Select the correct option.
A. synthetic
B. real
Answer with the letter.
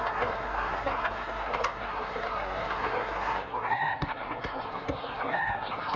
A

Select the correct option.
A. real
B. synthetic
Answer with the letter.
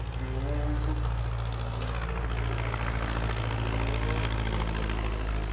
A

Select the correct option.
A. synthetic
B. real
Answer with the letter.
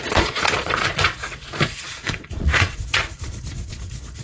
A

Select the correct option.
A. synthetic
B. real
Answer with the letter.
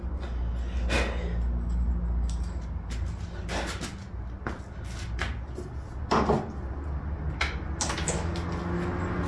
B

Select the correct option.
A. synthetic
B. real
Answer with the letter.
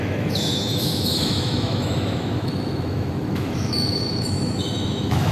A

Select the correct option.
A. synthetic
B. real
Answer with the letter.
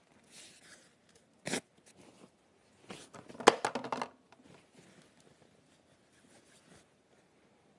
B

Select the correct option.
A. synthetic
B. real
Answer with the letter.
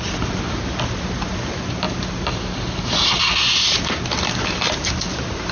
B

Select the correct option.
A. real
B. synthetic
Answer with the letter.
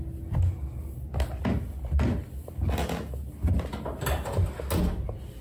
A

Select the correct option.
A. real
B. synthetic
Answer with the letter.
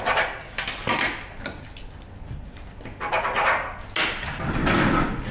A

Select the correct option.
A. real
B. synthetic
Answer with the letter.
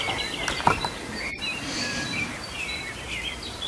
B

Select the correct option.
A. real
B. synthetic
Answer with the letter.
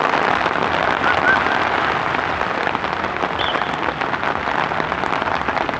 A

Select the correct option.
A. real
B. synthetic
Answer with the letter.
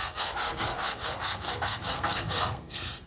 B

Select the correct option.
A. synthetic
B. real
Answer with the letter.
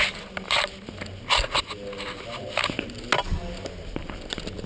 B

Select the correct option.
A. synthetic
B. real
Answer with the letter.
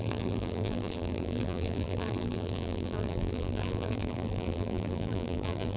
A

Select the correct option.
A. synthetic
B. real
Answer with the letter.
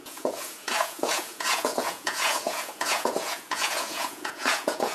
A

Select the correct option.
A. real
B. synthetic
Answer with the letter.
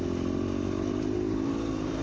A